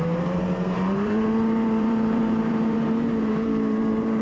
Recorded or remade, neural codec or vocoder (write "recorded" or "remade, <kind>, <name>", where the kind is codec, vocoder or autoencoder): remade, vocoder, BigVGAN v2